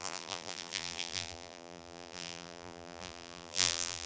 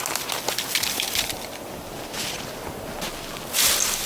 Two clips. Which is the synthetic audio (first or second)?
first